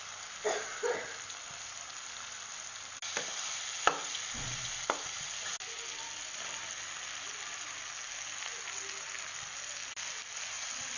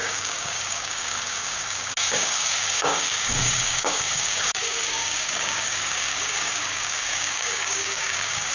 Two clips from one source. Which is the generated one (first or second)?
second